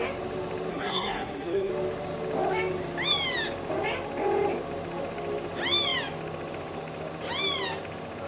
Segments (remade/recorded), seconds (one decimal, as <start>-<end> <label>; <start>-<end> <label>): 0.0-0.7 recorded; 0.7-1.7 remade; 1.7-8.3 recorded